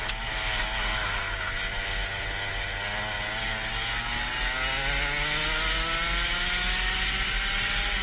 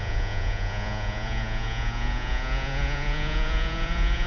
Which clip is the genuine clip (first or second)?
first